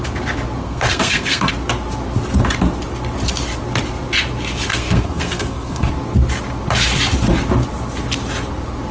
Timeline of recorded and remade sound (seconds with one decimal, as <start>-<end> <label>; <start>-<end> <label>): 0.0-0.6 recorded; 0.6-1.5 remade; 1.5-4.7 recorded; 4.7-5.9 remade; 5.9-8.9 recorded